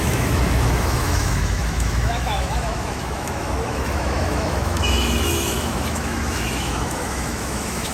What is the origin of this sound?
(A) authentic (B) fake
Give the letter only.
B